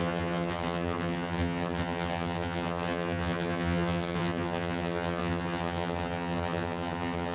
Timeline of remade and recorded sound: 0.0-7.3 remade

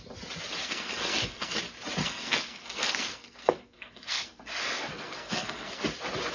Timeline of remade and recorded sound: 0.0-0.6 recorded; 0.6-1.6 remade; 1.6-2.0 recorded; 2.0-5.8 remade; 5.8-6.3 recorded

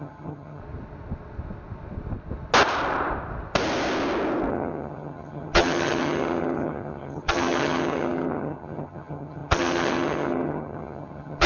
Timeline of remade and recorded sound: 0.0-0.6 remade; 0.6-4.5 recorded; 4.5-11.5 remade